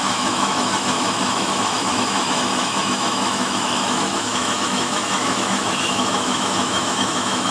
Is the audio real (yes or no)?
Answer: no